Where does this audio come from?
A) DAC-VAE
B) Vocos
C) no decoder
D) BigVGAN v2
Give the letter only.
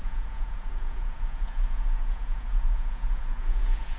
B